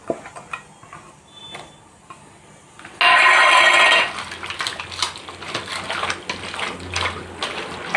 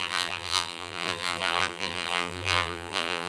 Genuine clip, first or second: first